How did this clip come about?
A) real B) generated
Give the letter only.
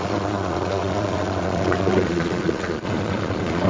B